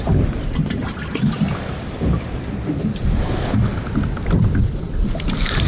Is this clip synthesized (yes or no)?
yes